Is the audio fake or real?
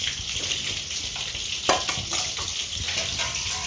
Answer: real